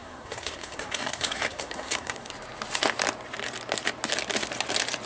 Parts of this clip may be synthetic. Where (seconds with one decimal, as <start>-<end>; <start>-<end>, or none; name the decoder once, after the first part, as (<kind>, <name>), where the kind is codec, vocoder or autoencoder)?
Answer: 0.0-2.3 (codec, SNAC)